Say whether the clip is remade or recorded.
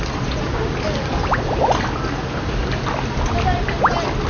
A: recorded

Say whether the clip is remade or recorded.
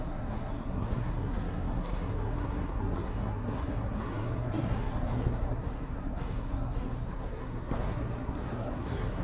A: remade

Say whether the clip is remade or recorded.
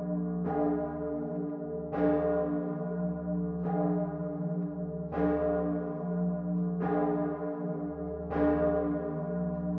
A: recorded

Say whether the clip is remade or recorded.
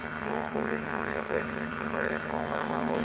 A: remade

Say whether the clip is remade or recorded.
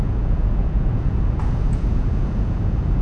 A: remade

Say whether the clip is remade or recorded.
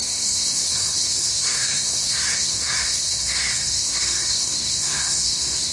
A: remade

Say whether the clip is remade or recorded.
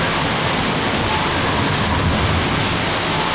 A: recorded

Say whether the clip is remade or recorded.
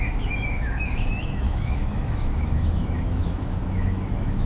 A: remade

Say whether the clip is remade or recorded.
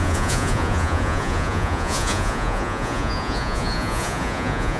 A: remade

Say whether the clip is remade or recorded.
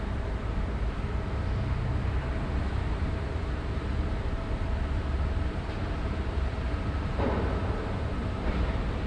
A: remade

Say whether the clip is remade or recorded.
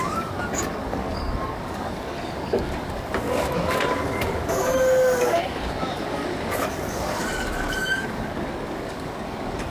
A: remade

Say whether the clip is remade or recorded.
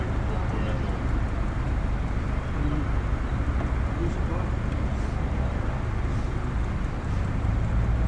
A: recorded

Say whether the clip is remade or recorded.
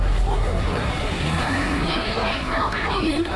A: remade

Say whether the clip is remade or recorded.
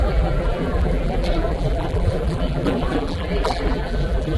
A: remade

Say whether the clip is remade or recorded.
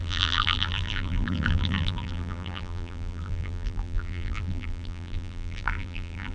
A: remade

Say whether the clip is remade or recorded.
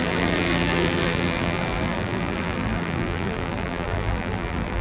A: remade